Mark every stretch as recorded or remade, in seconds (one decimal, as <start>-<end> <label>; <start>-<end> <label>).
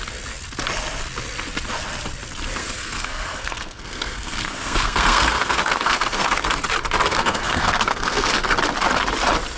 0.0-2.6 recorded; 2.6-6.5 remade; 6.5-7.1 recorded; 7.1-8.3 remade; 8.3-9.6 recorded